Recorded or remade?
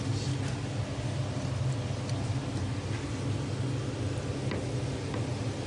recorded